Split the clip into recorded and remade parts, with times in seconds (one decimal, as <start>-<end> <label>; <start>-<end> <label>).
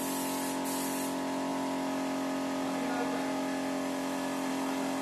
0.0-5.0 recorded